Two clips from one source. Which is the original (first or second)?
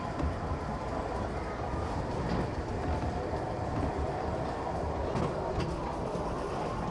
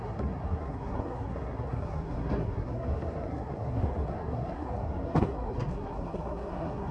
first